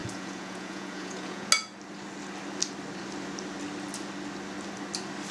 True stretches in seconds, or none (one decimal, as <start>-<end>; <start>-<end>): 1.5-5.3